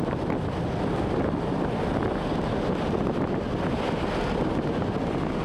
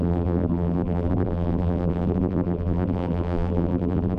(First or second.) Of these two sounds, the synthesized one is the second